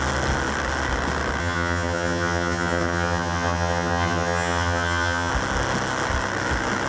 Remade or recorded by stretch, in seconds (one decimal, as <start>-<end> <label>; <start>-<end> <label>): 0.0-1.4 recorded; 1.4-5.3 remade; 5.3-6.9 recorded

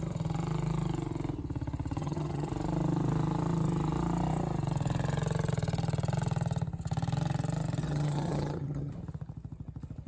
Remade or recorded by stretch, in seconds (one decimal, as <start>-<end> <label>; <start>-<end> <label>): 0.0-2.0 recorded; 2.0-2.5 remade; 2.5-7.8 recorded; 7.8-8.9 remade; 8.9-10.1 recorded

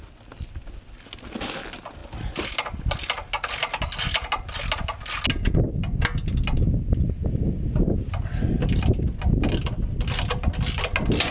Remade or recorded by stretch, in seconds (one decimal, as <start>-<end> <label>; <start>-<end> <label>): 0.0-11.3 recorded

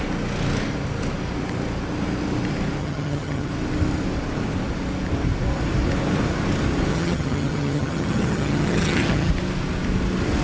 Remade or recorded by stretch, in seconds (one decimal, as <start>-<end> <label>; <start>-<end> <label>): 0.0-2.8 recorded; 2.8-3.5 remade; 3.5-6.9 recorded; 6.9-9.3 remade; 9.3-10.4 recorded

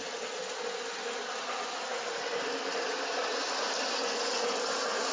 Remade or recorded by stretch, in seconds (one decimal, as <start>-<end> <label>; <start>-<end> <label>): 0.0-5.1 recorded

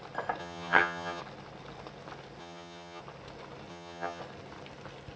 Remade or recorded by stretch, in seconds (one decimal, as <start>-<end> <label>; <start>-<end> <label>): 0.0-0.4 recorded; 0.4-1.2 remade; 1.2-2.4 recorded; 2.4-3.0 remade; 3.0-3.7 recorded; 3.7-4.2 remade; 4.2-5.2 recorded

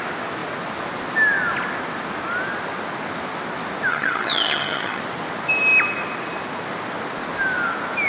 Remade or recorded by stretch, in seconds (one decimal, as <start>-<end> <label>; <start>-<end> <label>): 0.0-3.9 recorded; 3.9-5.0 remade; 5.0-8.1 recorded